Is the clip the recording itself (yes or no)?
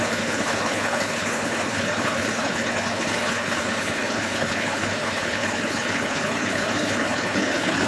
no